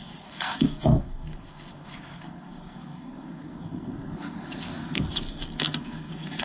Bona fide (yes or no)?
no